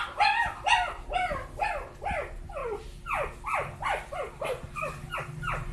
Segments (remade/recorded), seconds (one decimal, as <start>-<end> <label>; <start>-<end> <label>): 0.0-5.7 recorded